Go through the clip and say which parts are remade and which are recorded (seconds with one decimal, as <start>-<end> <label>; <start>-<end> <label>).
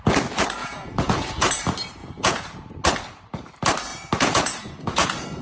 0.0-0.6 recorded; 0.6-1.5 remade; 1.5-2.0 recorded; 2.0-2.7 remade; 2.7-3.9 recorded; 3.9-5.4 remade